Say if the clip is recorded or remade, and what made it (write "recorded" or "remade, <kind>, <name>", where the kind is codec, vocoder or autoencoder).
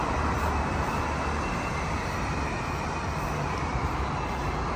recorded